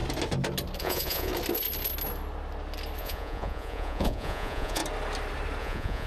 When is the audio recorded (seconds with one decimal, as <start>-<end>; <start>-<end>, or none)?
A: 0.0-0.8; 1.3-3.0; 4.8-5.6